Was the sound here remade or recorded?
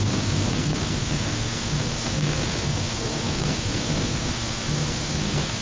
remade